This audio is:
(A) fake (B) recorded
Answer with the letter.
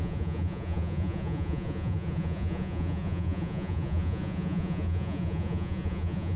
A